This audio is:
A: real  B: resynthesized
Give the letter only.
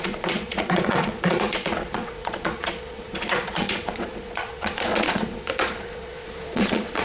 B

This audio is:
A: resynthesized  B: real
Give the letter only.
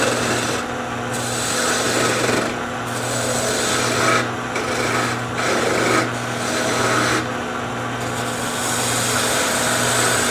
B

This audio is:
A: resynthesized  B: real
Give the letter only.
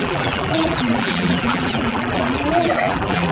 A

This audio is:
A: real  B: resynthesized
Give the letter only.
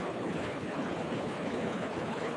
B